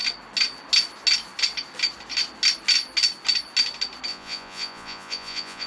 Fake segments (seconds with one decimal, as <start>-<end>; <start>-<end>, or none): 4.1-5.7